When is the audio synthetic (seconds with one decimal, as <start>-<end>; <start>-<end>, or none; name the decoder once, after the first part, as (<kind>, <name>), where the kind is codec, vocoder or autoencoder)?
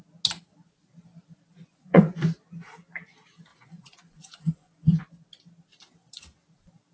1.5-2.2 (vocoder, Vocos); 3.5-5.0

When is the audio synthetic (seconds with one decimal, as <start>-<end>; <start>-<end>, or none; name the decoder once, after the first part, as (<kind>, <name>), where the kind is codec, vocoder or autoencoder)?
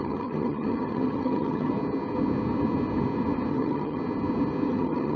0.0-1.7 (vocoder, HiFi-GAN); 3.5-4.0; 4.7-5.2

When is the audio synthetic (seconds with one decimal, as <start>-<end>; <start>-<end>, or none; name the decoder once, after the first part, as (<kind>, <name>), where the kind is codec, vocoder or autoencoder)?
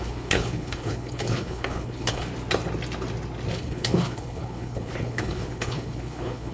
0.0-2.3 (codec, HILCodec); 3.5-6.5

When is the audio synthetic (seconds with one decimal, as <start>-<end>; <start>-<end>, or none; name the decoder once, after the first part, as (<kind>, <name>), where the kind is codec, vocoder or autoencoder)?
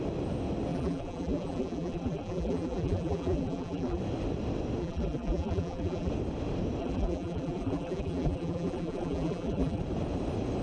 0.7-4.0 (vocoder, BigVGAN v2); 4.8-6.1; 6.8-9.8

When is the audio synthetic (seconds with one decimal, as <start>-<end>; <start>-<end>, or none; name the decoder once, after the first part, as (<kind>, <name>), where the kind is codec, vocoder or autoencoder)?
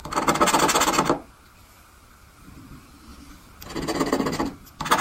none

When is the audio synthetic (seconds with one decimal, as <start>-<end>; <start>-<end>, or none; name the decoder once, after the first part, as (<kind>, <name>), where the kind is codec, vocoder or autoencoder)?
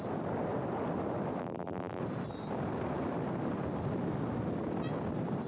1.4-2.0 (vocoder, BigVGAN v2)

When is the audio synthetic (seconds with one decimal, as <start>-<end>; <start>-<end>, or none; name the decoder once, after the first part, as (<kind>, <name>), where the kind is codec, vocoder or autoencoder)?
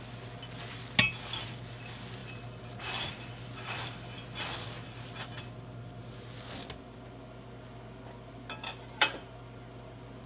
none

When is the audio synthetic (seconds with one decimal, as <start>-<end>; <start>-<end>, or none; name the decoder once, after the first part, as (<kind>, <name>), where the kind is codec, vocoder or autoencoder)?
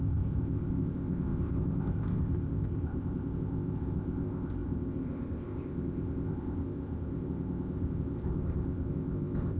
0.0-9.6 (codec, ZipCodec)